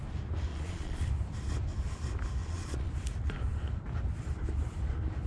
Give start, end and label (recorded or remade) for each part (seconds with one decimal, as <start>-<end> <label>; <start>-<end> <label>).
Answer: 0.0-0.5 recorded; 0.5-1.1 remade; 1.1-2.4 recorded; 2.4-2.9 remade; 2.9-5.3 recorded